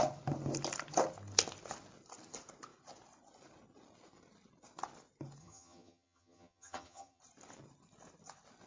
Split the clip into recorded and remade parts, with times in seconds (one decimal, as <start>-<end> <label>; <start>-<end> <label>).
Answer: 0.0-5.4 recorded; 5.4-7.2 remade; 7.2-8.7 recorded